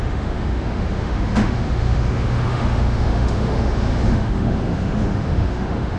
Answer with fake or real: fake